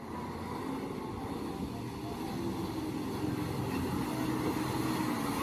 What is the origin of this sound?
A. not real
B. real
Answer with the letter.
B